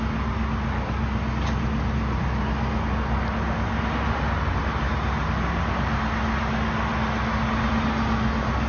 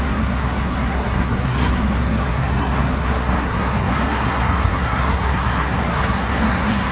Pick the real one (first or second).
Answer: first